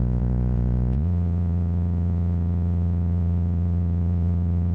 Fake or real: fake